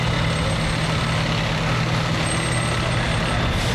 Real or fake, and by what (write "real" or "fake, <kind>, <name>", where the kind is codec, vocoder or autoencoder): real